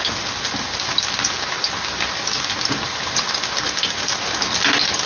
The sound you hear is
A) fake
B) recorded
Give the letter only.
B